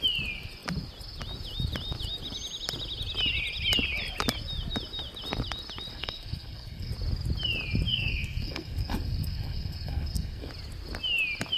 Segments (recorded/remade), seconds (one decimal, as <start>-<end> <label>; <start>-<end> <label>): 0.0-5.9 recorded; 5.9-6.9 remade; 6.9-7.9 recorded; 7.9-10.5 remade; 10.5-11.6 recorded